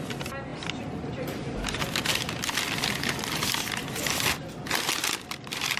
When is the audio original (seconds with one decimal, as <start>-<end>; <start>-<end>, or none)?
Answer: 0.0-5.8